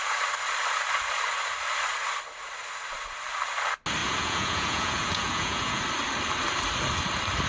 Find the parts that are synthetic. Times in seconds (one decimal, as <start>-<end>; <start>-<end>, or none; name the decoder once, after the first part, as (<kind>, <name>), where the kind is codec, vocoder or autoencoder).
4.0-5.8 (vocoder, Vocos)